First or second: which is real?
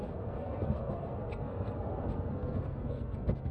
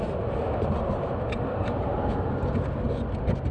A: second